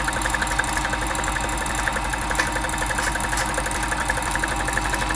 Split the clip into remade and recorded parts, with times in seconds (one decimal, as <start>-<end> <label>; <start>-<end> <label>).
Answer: 0.0-5.2 recorded